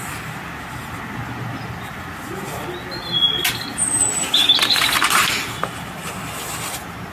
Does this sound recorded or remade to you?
recorded